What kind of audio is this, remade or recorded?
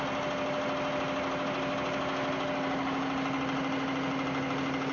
recorded